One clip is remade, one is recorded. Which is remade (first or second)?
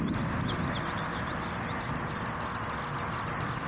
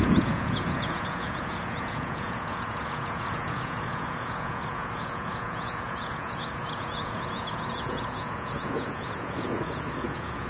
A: second